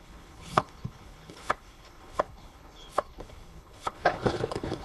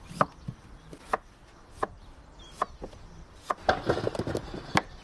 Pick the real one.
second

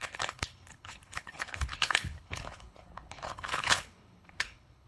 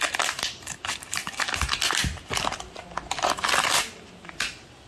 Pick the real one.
second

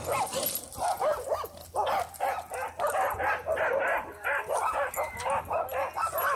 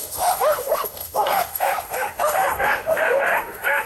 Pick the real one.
first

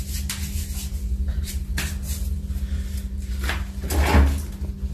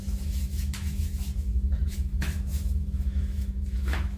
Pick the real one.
first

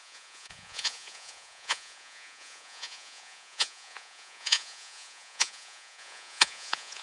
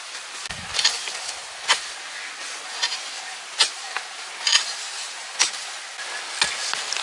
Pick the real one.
second